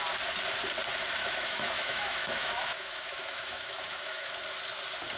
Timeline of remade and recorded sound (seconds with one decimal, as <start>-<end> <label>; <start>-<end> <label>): 0.0-1.2 recorded; 1.2-4.3 remade; 4.3-5.2 recorded